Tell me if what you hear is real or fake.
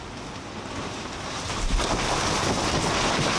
real